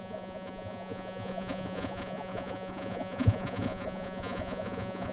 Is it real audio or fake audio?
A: fake